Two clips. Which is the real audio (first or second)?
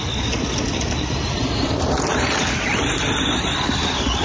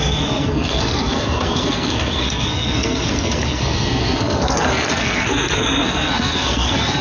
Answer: first